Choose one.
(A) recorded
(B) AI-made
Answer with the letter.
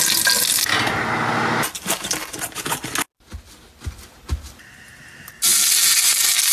A